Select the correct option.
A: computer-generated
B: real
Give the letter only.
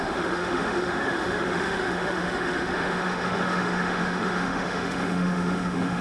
A